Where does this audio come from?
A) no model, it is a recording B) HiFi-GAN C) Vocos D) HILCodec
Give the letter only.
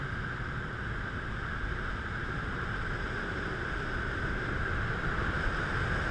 A